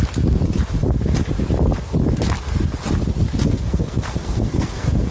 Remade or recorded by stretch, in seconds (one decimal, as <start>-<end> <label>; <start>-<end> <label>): 0.0-3.4 recorded; 3.4-5.1 remade

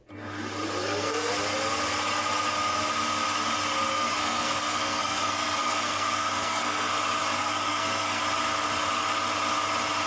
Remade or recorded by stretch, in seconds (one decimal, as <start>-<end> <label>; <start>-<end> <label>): 0.0-0.8 recorded; 0.8-1.3 remade; 1.3-3.9 recorded; 3.9-6.9 remade; 6.9-7.4 recorded; 7.4-8.2 remade; 8.2-10.1 recorded

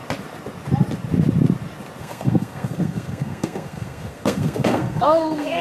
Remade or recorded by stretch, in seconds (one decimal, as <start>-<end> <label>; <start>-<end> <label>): 0.0-2.0 recorded; 2.0-5.6 remade

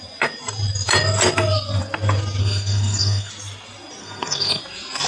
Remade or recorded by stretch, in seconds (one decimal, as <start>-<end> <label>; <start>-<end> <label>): 0.0-2.4 recorded; 2.4-3.3 remade; 3.3-4.0 recorded; 4.0-4.6 remade; 4.6-5.1 recorded

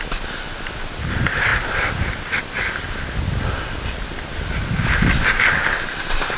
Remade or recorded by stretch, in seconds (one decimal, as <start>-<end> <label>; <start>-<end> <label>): 0.0-6.4 recorded